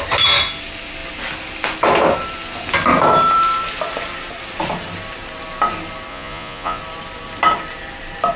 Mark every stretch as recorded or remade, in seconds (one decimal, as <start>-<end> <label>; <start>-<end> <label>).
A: 0.0-6.1 recorded; 6.1-6.8 remade; 6.8-8.4 recorded